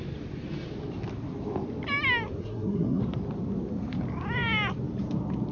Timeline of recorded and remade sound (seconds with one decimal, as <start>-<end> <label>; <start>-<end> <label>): 0.0-2.4 recorded; 2.4-3.0 remade; 3.0-5.5 recorded